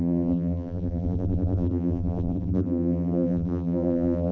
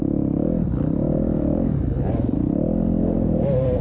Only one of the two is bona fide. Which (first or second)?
second